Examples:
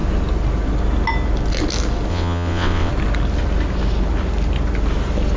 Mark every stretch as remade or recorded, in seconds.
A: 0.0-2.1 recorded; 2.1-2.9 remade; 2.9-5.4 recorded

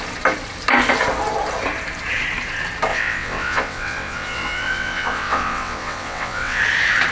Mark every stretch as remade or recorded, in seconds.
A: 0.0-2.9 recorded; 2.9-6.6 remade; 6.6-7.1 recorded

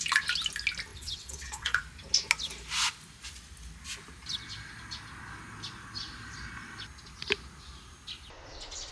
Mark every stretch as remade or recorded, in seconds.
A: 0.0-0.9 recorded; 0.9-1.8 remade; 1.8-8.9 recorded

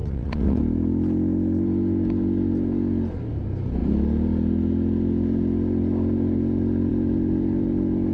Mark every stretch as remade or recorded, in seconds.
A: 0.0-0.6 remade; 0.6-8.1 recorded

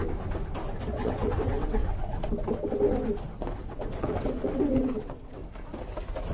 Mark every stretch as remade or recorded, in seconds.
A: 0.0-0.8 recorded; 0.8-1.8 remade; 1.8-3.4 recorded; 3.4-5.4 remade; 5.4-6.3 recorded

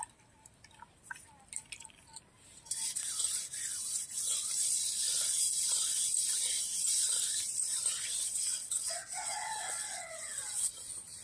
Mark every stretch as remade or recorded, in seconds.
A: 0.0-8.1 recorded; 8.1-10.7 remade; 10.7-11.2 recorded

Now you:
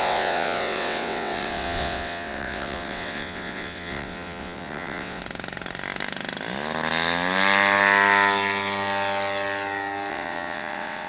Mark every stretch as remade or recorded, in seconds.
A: 0.0-5.2 remade; 5.2-10.1 recorded; 10.1-11.1 remade